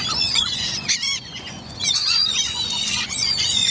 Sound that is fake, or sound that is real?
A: fake